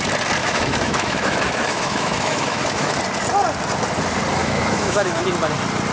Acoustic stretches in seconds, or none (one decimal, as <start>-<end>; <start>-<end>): 0.0-0.4; 3.0-4.4; 5.2-5.9